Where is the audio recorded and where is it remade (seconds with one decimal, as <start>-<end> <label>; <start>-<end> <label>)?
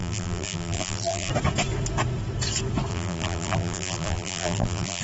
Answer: 0.0-1.3 remade; 1.3-2.9 recorded; 2.9-5.0 remade